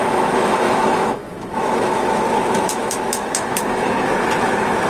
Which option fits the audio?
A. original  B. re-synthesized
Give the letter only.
B